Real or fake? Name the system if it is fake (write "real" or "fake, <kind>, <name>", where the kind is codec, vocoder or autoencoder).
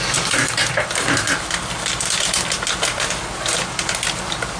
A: real